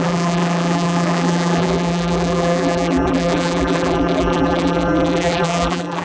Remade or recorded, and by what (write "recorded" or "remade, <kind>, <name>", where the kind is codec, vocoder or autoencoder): remade, vocoder, BigVGAN v2